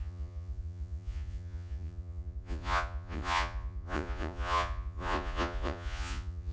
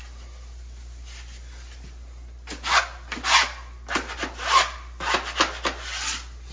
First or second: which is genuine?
second